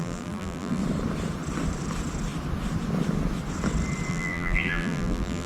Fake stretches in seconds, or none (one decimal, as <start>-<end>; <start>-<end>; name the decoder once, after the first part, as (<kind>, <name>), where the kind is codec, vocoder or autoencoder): 0.0-0.8 (vocoder, BigVGAN v2); 4.1-5.5